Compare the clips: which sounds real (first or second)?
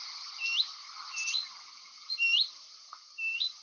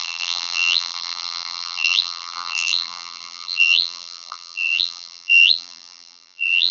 first